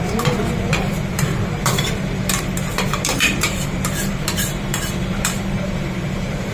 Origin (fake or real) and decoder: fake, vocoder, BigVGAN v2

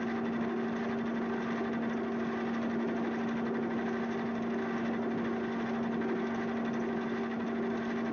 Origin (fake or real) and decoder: real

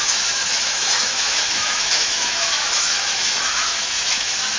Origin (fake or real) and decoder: fake, autoencoder, DAC-VAE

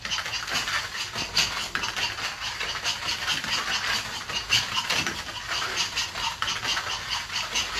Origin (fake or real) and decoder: real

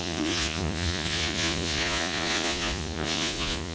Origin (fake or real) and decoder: fake, vocoder, Vocos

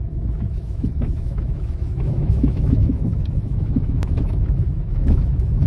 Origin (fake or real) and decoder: fake, autoencoder, DAC-VAE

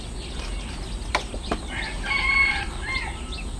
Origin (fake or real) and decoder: real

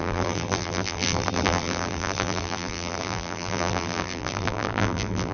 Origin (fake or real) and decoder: fake, vocoder, BigVGAN v2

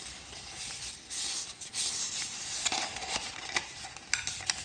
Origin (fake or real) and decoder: real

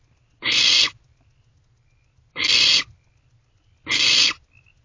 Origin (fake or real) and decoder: real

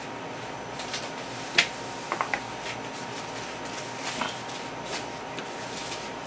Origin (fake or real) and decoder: real